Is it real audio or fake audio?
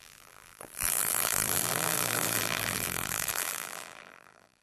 fake